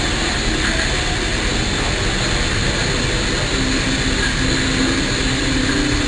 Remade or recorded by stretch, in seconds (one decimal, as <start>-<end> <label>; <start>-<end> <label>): 0.0-6.1 recorded